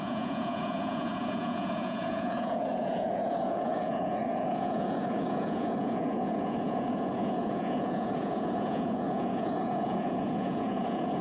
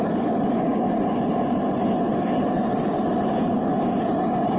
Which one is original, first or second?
second